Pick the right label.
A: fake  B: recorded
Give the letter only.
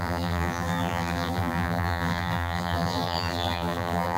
A